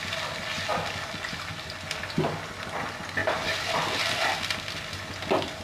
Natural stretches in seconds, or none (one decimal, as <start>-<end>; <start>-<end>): 0.0-5.6